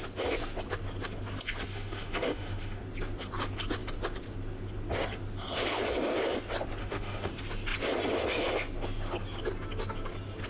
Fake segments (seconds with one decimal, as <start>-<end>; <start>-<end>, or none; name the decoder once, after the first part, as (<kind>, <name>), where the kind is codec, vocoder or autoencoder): 1.7-2.8 (autoencoder, DAC-VAE); 6.8-7.3